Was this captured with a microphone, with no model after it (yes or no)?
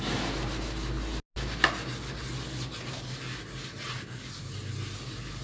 yes